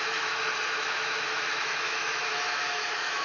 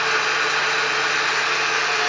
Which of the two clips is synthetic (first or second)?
first